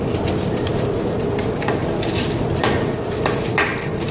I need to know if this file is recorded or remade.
recorded